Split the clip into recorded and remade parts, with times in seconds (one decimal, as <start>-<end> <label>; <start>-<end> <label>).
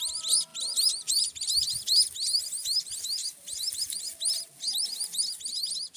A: 0.0-6.0 recorded